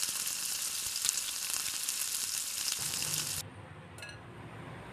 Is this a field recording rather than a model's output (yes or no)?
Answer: yes